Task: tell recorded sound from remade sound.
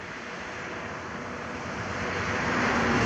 remade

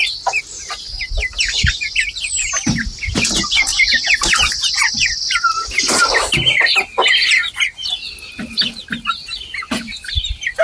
recorded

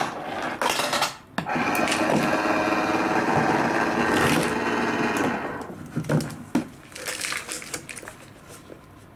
recorded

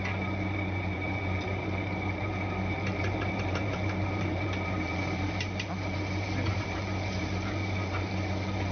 remade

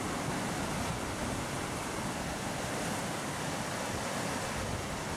recorded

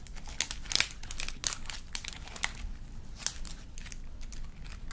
recorded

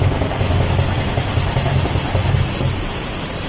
remade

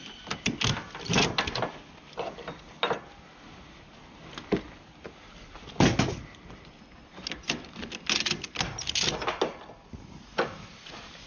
recorded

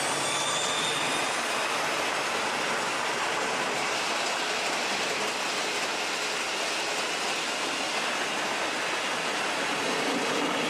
recorded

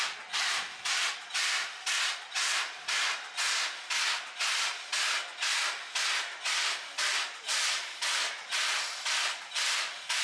recorded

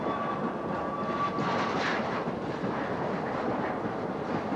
recorded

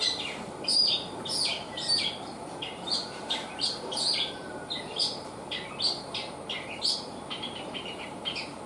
remade